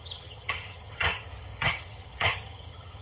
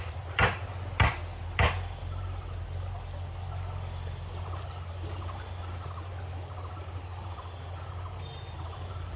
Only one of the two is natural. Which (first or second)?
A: second